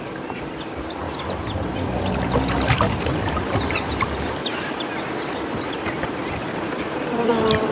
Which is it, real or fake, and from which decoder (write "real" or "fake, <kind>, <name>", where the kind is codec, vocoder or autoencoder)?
real